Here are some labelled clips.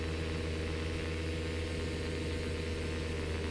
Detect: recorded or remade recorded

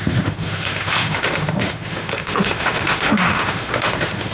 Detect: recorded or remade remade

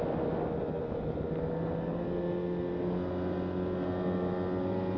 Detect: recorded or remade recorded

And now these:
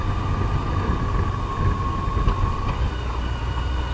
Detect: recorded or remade recorded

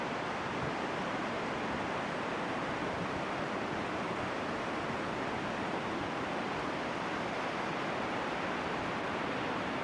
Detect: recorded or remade recorded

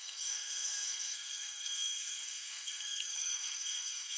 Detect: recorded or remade remade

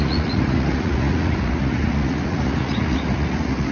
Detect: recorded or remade remade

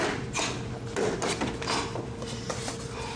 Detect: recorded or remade recorded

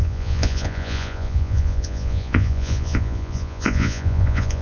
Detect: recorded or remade remade